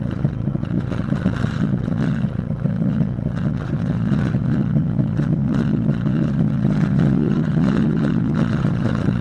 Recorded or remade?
remade